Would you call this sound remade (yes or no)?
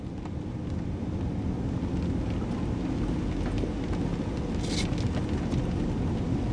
no